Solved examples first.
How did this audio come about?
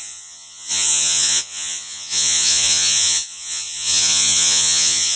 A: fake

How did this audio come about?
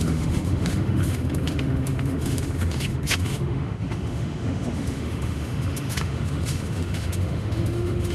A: fake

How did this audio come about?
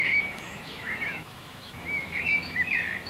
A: fake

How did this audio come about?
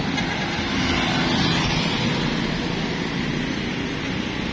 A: real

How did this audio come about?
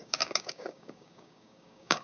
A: fake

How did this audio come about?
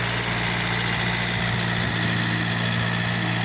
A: real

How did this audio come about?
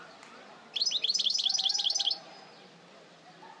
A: real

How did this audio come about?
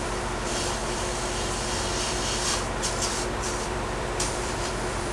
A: fake